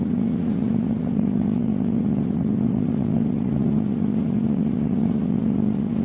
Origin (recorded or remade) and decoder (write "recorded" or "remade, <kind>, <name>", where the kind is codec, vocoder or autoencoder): remade, vocoder, Vocos